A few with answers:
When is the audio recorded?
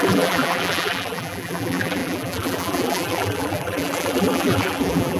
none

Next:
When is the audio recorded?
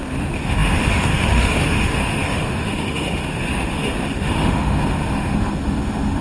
none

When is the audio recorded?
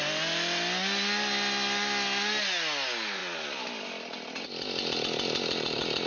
0.0-6.1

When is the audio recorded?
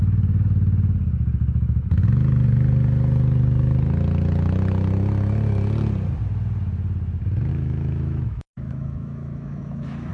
0.0-7.5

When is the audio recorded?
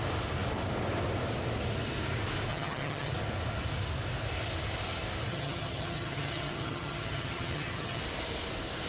0.0-2.5; 3.1-5.3; 8.0-8.9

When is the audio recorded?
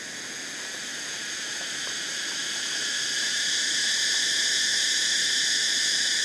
0.0-6.2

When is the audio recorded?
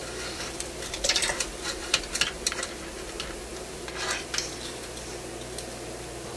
2.8-3.5; 5.1-6.4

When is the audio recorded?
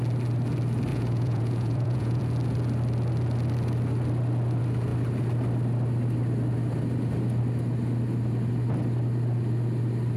0.0-0.9; 2.2-10.2